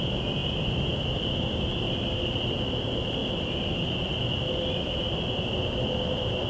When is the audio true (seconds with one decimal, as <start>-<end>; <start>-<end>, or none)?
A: 0.0-6.5